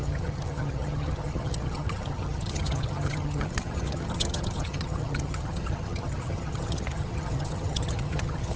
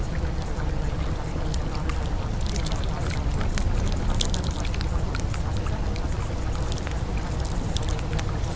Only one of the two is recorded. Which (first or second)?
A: second